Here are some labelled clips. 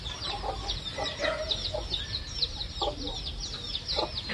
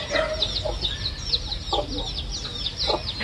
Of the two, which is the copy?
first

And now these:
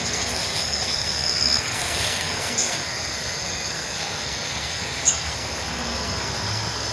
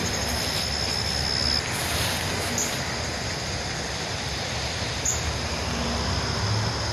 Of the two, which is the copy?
first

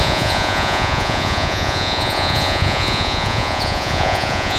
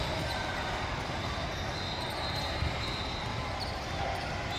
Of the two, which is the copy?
first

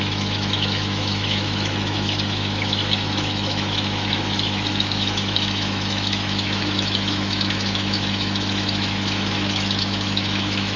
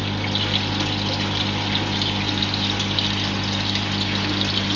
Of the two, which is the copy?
first